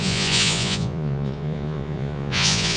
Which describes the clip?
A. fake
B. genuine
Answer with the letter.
A